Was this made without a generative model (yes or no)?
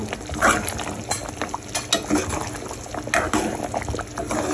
yes